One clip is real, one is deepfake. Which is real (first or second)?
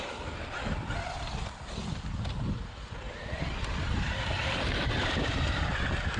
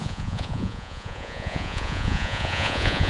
first